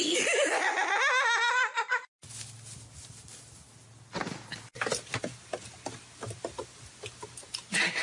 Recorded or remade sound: recorded